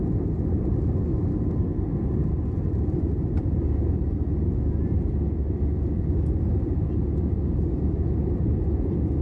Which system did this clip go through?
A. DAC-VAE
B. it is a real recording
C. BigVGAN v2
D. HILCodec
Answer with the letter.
B